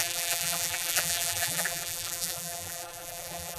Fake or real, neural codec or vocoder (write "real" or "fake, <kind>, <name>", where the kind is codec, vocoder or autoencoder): fake, vocoder, BigVGAN v2